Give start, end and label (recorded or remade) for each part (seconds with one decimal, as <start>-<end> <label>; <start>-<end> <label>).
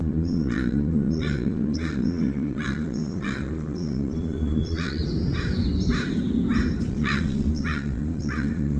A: 0.0-5.0 remade; 5.0-6.9 recorded; 6.9-8.8 remade